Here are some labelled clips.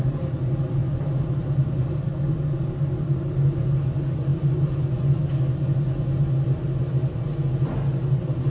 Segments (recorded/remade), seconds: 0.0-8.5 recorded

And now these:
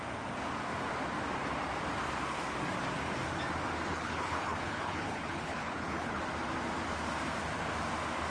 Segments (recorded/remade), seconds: 0.0-3.9 recorded; 3.9-6.2 remade; 6.2-8.3 recorded

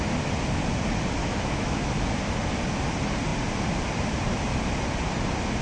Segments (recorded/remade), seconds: 0.0-1.2 recorded; 1.2-1.9 remade; 1.9-5.6 recorded

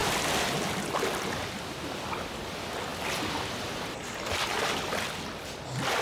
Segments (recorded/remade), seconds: 0.0-6.0 recorded

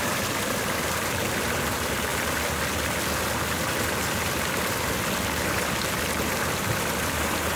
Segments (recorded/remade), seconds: 0.0-2.1 remade; 2.1-6.5 recorded; 6.5-7.6 remade

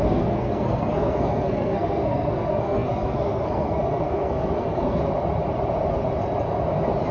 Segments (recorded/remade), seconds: 0.0-5.0 remade; 5.0-7.1 recorded